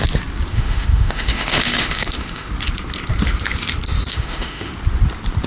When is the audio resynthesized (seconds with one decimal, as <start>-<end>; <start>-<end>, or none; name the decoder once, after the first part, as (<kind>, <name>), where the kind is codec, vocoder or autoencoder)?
0.5-2.5 (autoencoder, DAC-VAE); 4.1-4.7

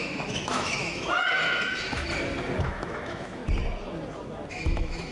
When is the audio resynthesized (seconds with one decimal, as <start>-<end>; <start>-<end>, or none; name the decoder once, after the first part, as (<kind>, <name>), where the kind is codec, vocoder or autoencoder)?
0.0-2.1 (autoencoder, DAC-VAE); 2.6-3.4; 4.5-5.1

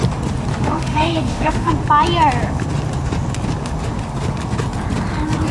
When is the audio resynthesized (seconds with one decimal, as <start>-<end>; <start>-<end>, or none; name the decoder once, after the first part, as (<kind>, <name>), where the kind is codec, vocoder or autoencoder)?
0.5-1.7 (autoencoder, DAC-VAE)

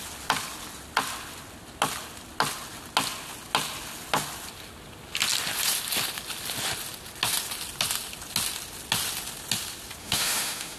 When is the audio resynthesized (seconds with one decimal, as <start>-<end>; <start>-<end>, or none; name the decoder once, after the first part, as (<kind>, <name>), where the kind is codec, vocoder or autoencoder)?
10.0-10.8 (autoencoder, DAC-VAE)